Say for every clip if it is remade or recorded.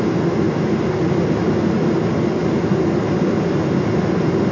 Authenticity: recorded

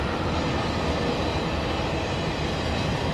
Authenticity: recorded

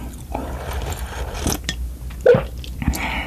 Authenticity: recorded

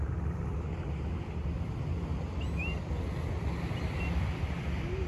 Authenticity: recorded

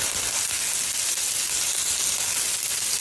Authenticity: recorded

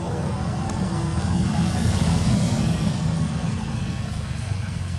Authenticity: remade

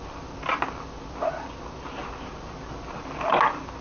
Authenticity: recorded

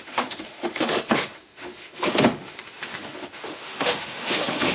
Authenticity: remade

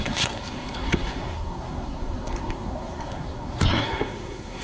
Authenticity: remade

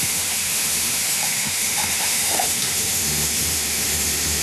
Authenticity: remade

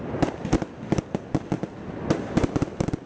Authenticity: recorded